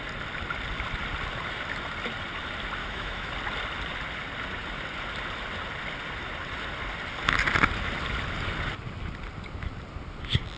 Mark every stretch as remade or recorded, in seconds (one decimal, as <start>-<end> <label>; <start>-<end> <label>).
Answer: 0.0-2.8 recorded; 2.8-3.3 remade; 3.3-10.6 recorded